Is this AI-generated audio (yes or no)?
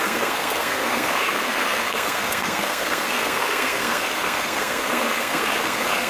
yes